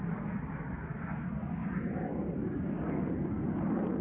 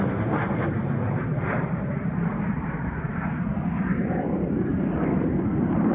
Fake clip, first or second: second